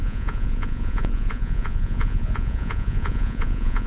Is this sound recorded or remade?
remade